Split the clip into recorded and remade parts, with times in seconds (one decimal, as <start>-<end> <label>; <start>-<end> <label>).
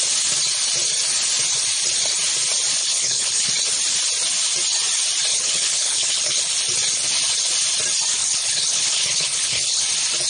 0.0-2.8 recorded; 2.8-3.5 remade; 3.5-5.3 recorded; 5.3-6.4 remade; 6.4-8.2 recorded; 8.2-9.8 remade; 9.8-10.3 recorded